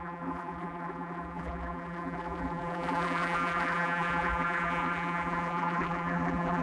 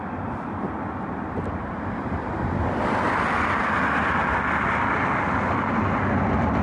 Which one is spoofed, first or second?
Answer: first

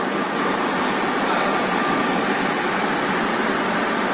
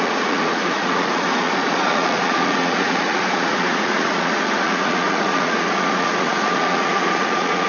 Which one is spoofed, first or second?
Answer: second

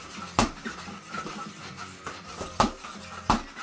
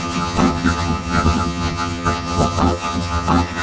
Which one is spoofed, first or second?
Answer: second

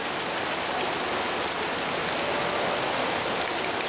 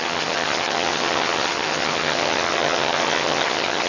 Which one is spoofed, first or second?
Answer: second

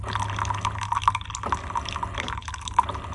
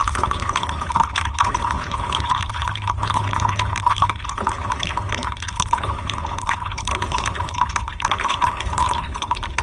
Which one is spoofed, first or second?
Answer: second